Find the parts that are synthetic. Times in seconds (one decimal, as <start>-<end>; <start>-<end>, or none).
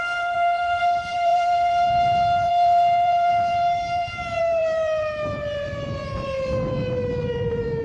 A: 0.0-7.8